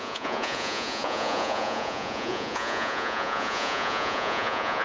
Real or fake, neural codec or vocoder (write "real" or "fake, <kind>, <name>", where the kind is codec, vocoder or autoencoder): fake, vocoder, Vocos